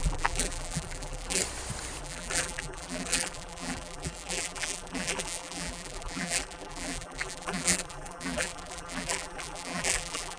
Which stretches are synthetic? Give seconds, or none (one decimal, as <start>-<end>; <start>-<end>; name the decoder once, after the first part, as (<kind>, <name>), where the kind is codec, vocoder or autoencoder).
0.0-1.4 (vocoder, BigVGAN v2); 2.0-10.4